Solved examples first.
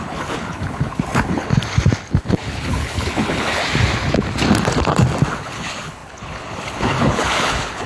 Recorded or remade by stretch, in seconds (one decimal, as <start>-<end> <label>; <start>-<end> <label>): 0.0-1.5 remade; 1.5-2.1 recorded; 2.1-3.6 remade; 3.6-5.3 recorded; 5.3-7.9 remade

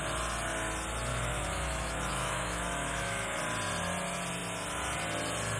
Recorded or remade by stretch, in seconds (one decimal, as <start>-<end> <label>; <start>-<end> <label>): 0.0-1.1 recorded; 1.1-3.4 remade; 3.4-5.6 recorded

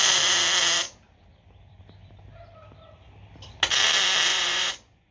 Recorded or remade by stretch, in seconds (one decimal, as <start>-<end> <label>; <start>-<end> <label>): 0.0-4.3 recorded; 4.3-5.1 remade